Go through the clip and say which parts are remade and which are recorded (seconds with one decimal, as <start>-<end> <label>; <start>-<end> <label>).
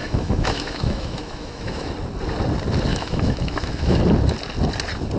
0.0-1.9 remade; 1.9-2.9 recorded; 2.9-4.0 remade; 4.0-5.2 recorded